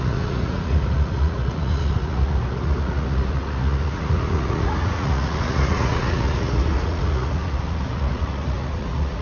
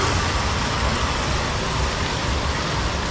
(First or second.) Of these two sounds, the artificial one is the first